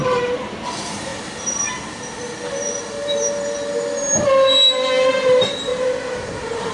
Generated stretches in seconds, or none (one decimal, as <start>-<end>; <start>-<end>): 0.0-1.1; 5.1-6.7